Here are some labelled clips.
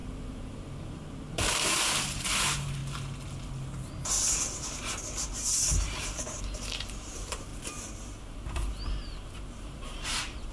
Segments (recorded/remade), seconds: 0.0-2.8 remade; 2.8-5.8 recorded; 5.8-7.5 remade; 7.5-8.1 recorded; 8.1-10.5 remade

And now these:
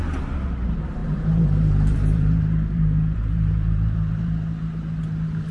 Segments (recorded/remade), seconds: 0.0-1.0 recorded; 1.0-4.3 remade; 4.3-5.5 recorded

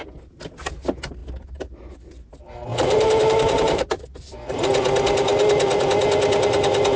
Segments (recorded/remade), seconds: 0.0-2.7 recorded; 2.7-4.0 remade; 4.0-7.0 recorded

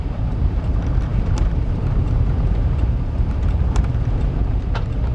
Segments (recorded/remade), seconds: 0.0-5.1 remade

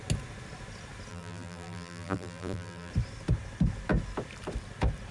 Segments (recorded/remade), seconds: 0.0-1.1 recorded; 1.1-2.9 remade; 2.9-5.1 recorded